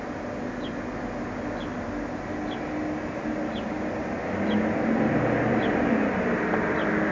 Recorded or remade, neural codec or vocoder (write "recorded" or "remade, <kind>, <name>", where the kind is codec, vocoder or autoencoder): recorded